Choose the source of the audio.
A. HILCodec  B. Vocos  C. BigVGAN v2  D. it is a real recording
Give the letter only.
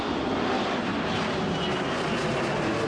D